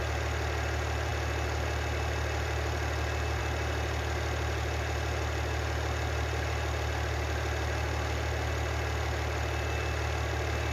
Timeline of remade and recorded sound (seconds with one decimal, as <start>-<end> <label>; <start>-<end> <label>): 0.0-10.7 recorded